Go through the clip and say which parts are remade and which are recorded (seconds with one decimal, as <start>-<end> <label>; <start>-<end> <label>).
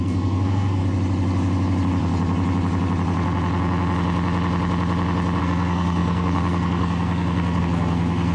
0.0-0.8 remade; 0.8-5.4 recorded; 5.4-8.3 remade